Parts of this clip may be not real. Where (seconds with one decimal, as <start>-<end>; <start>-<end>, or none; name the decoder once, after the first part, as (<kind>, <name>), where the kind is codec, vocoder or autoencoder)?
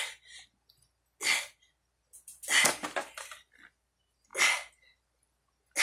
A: none